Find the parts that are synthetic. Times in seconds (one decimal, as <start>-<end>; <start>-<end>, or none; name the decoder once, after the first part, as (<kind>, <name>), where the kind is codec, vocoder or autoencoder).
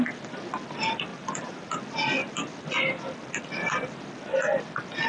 1.1-1.8 (vocoder, BigVGAN v2)